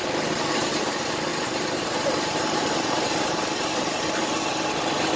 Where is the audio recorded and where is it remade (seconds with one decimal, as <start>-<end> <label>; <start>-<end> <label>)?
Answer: 0.0-1.3 recorded; 1.3-4.4 remade; 4.4-5.2 recorded